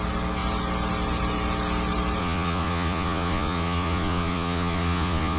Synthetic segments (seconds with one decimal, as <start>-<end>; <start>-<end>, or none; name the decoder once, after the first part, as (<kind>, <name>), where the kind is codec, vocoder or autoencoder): 2.2-5.4 (vocoder, Vocos)